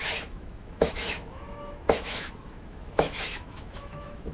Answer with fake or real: fake